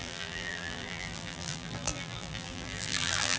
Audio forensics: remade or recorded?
remade